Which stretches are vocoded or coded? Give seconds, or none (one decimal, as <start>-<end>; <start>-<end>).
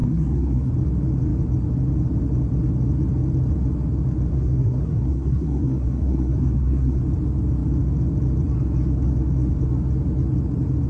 0.0-0.7; 4.3-7.0